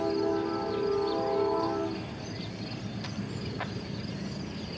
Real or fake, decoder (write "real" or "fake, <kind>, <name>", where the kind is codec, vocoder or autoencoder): real